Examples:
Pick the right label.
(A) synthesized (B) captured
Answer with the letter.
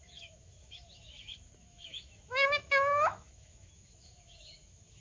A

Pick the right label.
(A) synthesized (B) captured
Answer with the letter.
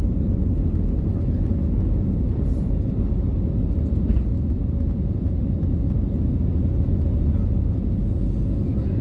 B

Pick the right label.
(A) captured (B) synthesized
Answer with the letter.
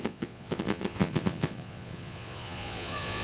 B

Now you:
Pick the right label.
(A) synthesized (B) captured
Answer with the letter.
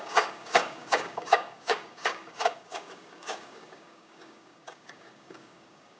A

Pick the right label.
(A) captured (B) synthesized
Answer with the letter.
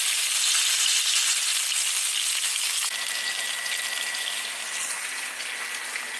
A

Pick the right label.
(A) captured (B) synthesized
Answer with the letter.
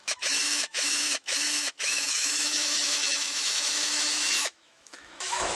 B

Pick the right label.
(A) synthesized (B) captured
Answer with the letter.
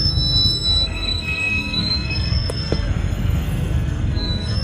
A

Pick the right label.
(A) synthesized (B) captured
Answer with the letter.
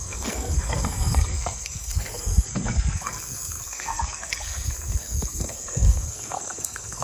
A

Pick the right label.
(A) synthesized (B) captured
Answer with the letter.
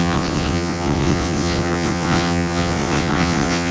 A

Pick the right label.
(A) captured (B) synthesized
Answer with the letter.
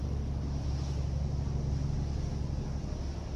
A